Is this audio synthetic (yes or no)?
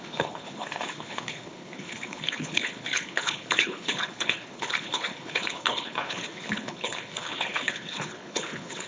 yes